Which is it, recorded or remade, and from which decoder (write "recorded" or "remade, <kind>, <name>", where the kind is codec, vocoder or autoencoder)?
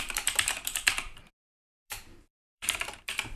remade, vocoder, BigVGAN v2